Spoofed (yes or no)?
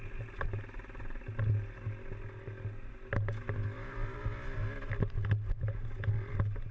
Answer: no